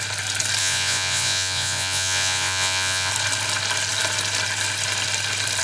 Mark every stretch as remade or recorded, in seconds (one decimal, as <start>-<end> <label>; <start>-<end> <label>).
0.0-0.6 recorded; 0.6-3.1 remade; 3.1-5.6 recorded